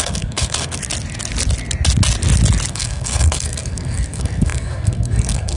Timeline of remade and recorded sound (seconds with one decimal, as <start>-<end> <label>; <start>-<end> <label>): 0.0-0.8 remade; 0.8-2.7 recorded; 2.7-5.6 remade